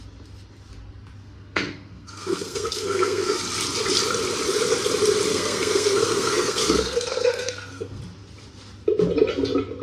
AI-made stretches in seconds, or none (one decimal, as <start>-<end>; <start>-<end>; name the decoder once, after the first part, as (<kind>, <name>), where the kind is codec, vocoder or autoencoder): 1.2-3.4 (codec, SNAC); 5.3-8.0